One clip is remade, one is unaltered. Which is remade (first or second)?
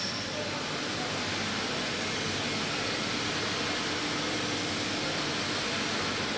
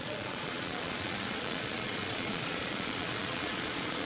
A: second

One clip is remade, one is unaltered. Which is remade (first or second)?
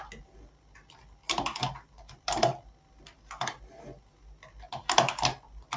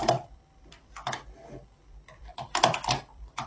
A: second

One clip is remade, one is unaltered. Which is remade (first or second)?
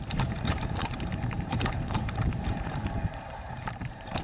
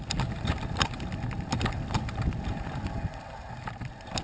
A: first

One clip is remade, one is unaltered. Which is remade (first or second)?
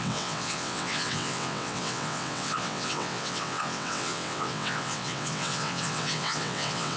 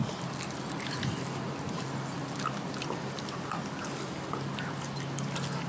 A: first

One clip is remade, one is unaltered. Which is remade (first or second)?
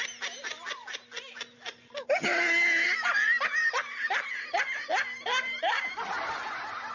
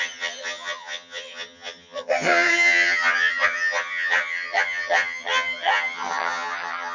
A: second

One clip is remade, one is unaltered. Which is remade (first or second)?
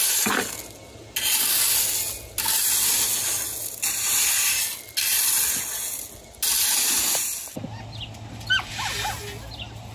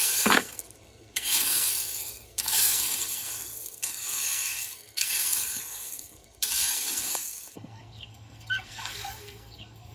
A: second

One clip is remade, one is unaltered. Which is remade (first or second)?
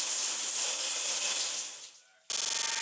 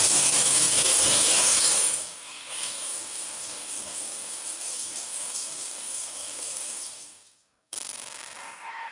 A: second